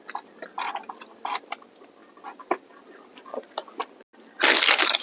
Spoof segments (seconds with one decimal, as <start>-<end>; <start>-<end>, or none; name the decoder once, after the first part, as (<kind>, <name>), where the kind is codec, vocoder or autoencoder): none